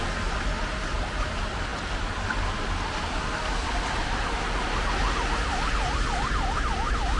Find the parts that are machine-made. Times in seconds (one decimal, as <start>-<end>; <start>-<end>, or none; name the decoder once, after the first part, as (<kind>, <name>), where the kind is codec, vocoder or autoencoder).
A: none